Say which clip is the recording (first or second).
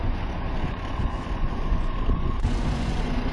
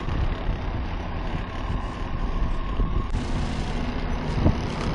second